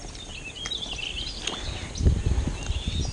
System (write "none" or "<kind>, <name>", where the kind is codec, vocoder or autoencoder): none